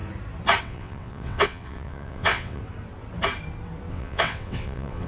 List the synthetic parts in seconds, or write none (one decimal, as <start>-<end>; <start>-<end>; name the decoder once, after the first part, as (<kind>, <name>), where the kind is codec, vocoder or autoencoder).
0.6-2.6 (vocoder, WaveNeXt); 3.9-5.1